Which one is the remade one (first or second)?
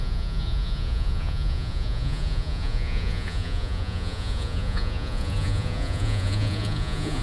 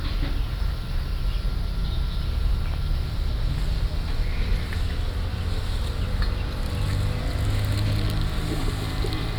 first